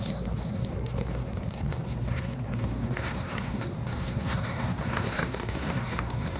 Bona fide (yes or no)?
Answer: no